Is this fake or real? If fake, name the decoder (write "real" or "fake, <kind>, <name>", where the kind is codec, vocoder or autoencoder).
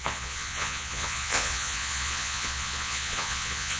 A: fake, vocoder, Vocos